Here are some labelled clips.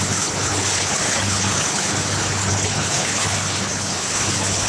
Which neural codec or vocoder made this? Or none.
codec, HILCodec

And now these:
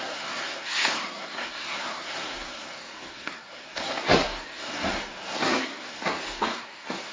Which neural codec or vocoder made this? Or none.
codec, SNAC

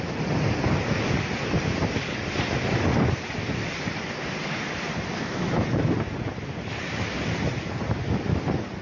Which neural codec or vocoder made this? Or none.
none